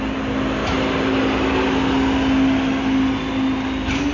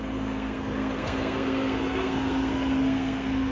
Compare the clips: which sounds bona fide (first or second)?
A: first